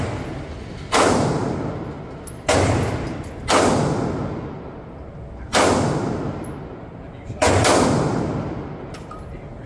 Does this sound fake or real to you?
real